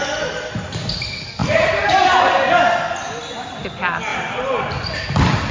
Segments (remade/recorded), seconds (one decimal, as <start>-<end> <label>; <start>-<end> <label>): 0.0-1.4 recorded; 1.4-2.1 remade; 2.1-5.5 recorded